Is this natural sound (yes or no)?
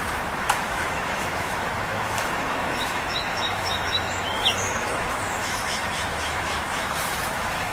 no